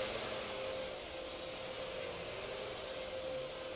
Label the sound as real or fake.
real